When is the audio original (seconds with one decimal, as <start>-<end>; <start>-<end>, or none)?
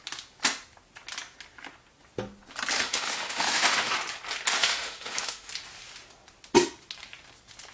0.0-2.8; 3.9-4.6; 5.5-7.7